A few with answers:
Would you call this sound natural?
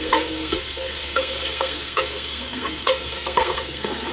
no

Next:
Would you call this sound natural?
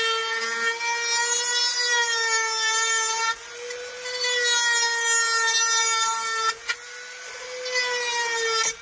yes